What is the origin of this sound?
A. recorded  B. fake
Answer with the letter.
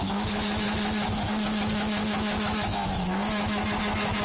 B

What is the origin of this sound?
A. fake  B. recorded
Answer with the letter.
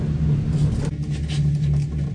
B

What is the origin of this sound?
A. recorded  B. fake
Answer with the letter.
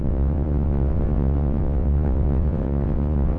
B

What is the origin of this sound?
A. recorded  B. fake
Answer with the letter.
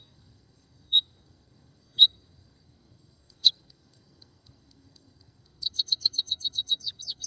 B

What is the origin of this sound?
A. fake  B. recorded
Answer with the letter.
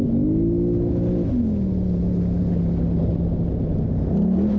B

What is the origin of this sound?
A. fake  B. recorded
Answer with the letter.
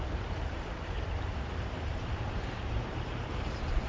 A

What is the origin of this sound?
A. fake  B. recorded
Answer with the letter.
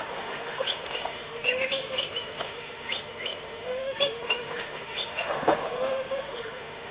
A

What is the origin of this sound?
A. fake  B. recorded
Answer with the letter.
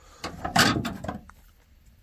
B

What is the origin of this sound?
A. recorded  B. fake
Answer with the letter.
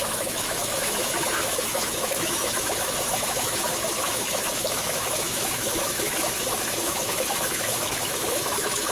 B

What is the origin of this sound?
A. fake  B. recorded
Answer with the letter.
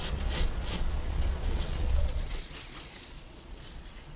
A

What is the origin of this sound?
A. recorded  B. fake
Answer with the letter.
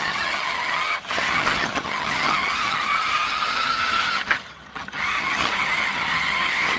B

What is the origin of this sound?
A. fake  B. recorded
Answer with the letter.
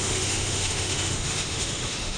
A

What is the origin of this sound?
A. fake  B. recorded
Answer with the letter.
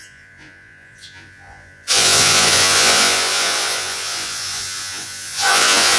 A